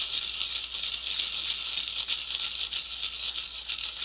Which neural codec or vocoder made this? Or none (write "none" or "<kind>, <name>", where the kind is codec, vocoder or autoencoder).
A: none